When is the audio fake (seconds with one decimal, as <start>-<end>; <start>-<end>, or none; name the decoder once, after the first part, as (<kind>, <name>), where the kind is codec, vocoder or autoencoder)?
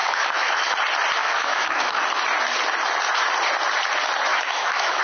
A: 0.0-0.7 (autoencoder, DAC-VAE); 1.2-2.0; 4.3-5.0